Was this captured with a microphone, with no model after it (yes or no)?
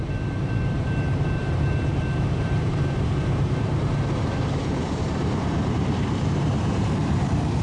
no